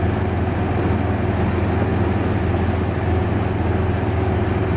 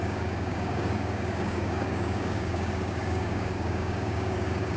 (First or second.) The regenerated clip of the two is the second